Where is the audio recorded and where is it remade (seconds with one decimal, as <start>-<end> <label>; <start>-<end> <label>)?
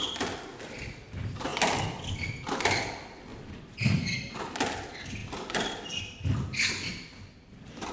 0.0-7.9 recorded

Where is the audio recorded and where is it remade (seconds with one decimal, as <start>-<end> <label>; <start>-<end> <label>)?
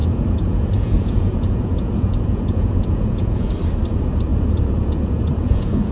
0.0-3.5 remade; 3.5-4.3 recorded; 4.3-5.9 remade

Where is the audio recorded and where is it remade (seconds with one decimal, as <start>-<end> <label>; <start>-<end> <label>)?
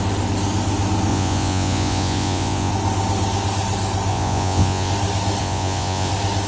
0.0-1.1 recorded; 1.1-2.7 remade; 2.7-4.1 recorded; 4.1-4.9 remade; 4.9-5.4 recorded; 5.4-6.1 remade; 6.1-6.5 recorded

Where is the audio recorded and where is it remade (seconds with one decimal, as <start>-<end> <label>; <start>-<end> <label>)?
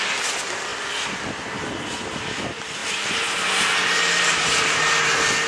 0.0-2.8 recorded; 2.8-5.0 remade; 5.0-5.5 recorded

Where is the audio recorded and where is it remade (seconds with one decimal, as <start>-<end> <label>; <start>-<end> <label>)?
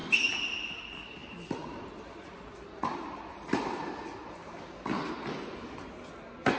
0.0-6.6 recorded